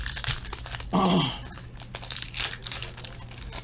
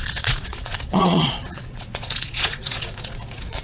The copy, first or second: second